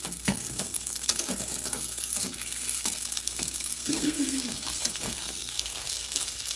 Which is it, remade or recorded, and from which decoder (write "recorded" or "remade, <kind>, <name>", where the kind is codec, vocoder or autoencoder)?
remade, codec, SNAC